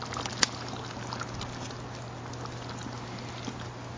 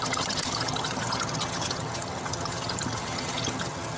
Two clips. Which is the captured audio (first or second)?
first